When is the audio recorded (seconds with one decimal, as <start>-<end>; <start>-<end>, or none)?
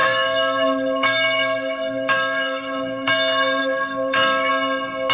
3.1-3.6; 4.5-5.1